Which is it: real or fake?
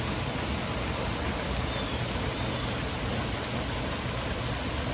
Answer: real